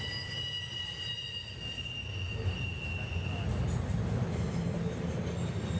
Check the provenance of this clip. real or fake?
real